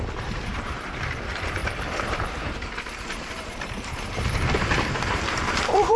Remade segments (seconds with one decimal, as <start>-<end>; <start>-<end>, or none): 0.0-6.0